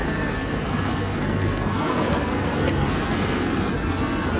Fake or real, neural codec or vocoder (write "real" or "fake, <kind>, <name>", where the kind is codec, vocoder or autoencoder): fake, codec, SNAC